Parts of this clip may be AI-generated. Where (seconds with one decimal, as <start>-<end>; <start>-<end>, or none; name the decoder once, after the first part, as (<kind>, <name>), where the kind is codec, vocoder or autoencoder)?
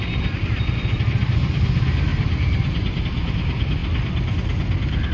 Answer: 2.1-3.0 (vocoder, BigVGAN v2)